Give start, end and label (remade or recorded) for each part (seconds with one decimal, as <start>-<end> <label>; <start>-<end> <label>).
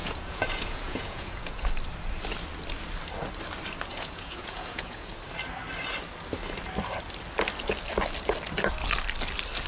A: 0.0-1.7 remade; 1.7-3.9 recorded; 3.9-5.1 remade; 5.1-9.7 recorded